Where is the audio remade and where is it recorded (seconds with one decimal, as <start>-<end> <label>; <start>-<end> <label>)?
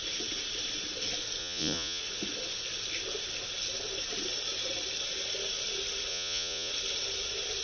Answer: 0.0-1.4 recorded; 1.4-2.0 remade; 2.0-6.1 recorded; 6.1-6.7 remade; 6.7-7.6 recorded